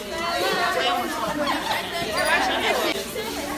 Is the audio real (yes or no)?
yes